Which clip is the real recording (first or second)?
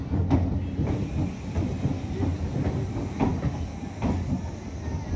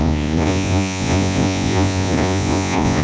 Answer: first